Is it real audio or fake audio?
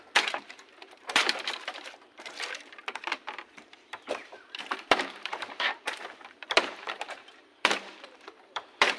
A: fake